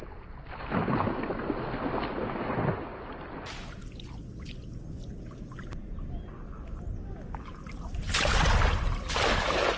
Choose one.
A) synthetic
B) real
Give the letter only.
B